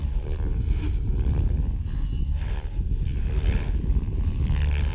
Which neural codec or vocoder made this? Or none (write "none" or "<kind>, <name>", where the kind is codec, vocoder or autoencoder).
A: none